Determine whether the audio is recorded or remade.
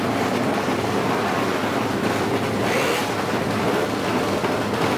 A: recorded